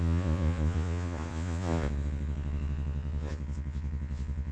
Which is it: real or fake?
fake